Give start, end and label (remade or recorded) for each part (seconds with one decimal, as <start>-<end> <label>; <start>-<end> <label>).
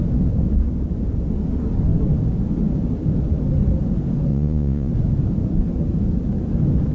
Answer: 0.0-4.3 recorded; 4.3-4.9 remade; 4.9-6.9 recorded